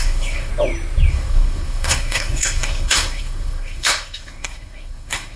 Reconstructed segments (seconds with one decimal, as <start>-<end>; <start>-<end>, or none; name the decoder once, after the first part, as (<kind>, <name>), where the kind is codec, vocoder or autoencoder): 0.0-0.5 (codec, SNAC); 1.1-5.4